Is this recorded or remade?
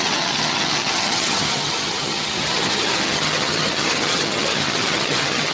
remade